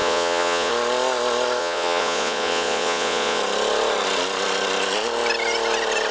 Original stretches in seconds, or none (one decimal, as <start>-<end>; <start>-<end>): 0.7-1.6; 3.4-6.1